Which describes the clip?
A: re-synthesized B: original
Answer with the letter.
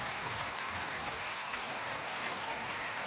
A